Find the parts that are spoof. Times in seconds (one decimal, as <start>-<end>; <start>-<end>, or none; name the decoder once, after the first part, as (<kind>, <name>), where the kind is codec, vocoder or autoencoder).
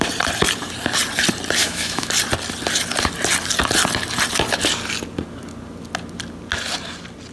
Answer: 1.6-2.1 (autoencoder, DAC-VAE)